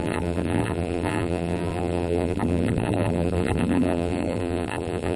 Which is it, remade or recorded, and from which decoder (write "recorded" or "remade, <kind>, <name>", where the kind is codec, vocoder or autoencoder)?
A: remade, vocoder, BigVGAN v2